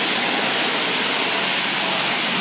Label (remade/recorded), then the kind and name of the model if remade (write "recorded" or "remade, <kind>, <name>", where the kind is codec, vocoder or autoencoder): recorded